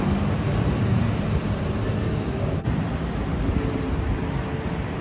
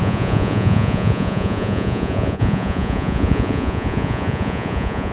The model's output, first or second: second